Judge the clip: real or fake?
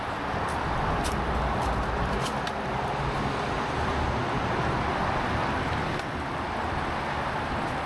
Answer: real